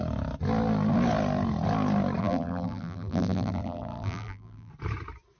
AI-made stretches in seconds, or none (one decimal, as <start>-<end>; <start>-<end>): 2.2-4.7